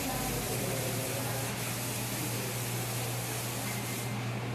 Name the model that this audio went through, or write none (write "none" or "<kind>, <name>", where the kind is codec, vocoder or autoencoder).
none